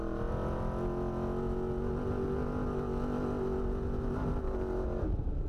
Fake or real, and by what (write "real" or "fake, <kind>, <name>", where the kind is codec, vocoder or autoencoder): real